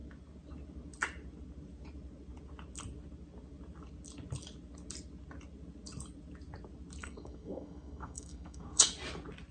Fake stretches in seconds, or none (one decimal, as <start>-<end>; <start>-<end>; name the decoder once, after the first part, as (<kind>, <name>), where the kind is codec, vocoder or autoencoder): 7.0-8.9 (codec, SNAC)